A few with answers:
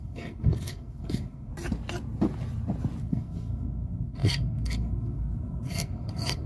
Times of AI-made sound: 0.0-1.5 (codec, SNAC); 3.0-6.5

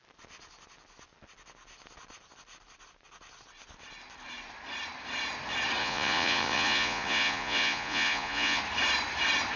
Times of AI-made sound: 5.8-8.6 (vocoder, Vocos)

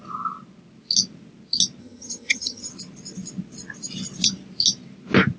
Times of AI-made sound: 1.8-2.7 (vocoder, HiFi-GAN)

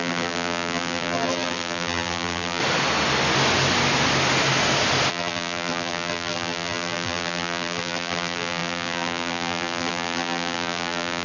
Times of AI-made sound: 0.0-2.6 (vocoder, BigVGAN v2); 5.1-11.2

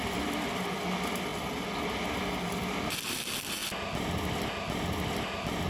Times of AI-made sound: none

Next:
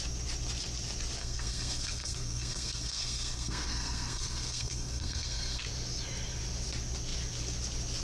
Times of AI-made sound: 1.2-5.6 (codec, SNAC)

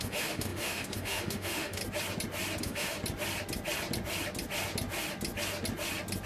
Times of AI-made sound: 0.0-1.8 (autoencoder, DAC-VAE); 2.6-3.0

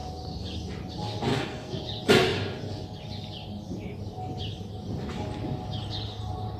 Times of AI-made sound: 1.3-1.8 (codec, SNAC)